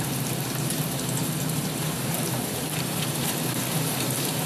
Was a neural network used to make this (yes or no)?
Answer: yes